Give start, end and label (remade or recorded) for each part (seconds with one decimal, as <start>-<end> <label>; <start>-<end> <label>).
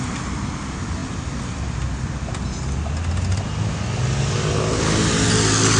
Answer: 0.0-5.8 recorded